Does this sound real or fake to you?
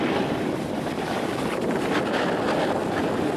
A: real